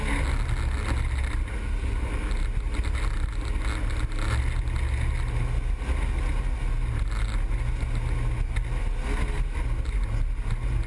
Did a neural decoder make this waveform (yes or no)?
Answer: no